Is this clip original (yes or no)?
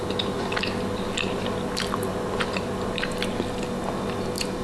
yes